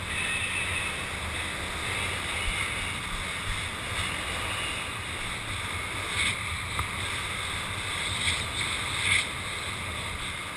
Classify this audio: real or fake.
real